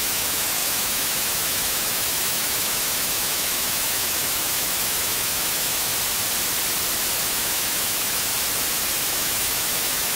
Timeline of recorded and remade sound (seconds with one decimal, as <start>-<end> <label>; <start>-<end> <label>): 0.0-5.9 remade; 5.9-7.2 recorded; 7.2-8.3 remade; 8.3-9.1 recorded; 9.1-10.2 remade